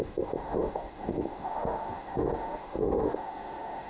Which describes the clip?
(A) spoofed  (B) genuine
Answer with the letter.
A